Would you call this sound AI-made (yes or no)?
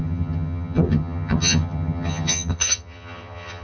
yes